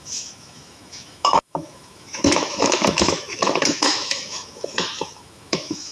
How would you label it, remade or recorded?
remade